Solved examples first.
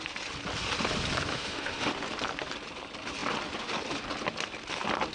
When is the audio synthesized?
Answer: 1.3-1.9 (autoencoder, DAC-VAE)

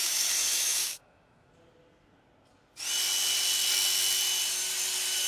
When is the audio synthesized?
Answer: 0.0-1.5 (autoencoder, DAC-VAE)

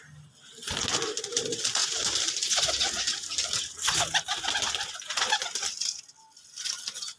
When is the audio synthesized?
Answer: none

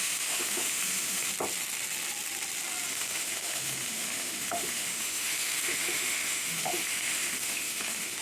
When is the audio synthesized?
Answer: 0.0-1.3 (autoencoder, DAC-VAE); 2.9-8.2

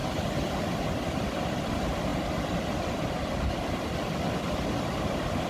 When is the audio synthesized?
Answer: none

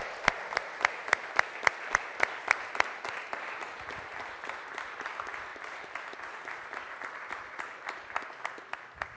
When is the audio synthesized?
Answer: none